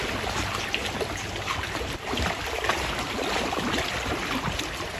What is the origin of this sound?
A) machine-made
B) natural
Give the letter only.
B